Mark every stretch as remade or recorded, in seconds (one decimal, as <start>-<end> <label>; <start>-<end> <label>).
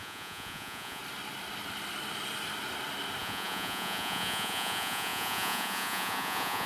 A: 0.0-1.0 remade; 1.0-3.2 recorded; 3.2-6.7 remade